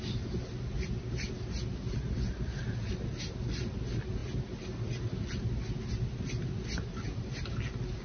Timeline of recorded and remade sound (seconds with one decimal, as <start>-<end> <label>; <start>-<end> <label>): 0.0-8.0 recorded